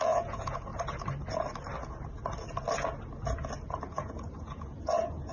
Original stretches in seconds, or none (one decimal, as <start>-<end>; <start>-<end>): 0.7-3.9